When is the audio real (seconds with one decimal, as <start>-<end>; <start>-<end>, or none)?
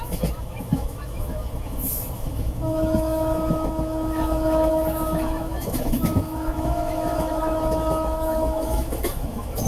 none